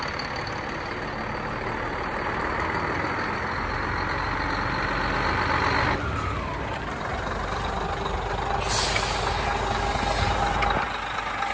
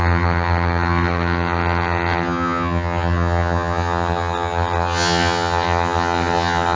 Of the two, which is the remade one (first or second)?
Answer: second